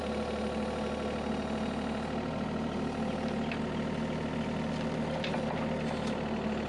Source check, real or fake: real